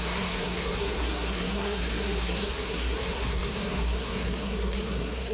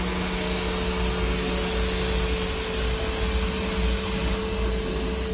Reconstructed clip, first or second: first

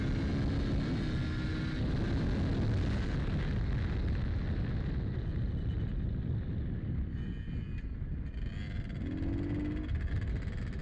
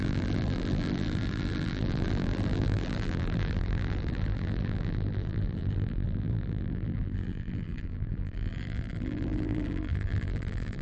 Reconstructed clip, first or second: second